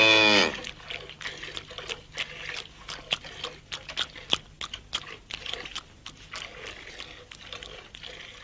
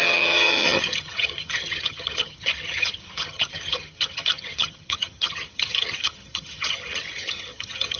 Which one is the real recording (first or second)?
first